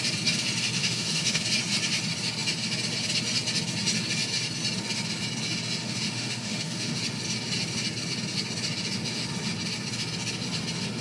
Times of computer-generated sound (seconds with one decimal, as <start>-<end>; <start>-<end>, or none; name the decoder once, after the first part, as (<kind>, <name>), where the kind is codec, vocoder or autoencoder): 0.8-1.4 (autoencoder, DAC-VAE); 5.8-6.9